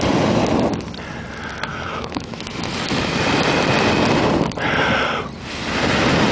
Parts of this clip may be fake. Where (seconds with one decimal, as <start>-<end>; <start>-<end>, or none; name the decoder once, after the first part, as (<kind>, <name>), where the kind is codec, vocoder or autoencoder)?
1.7-2.4 (autoencoder, DAC-VAE)